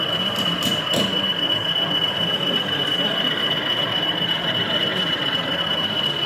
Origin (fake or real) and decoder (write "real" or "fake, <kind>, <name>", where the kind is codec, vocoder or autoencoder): real